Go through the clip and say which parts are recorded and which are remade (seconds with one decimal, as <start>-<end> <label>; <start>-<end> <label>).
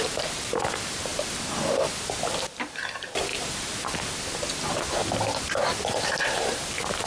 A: 0.0-7.1 recorded